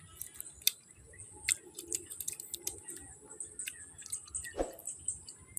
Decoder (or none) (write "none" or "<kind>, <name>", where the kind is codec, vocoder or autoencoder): none